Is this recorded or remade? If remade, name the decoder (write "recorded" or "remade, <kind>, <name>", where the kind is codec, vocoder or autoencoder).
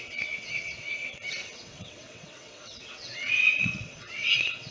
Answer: remade, vocoder, WaveNeXt